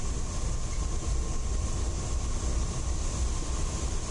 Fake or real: real